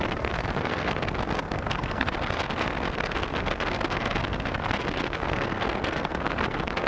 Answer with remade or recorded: remade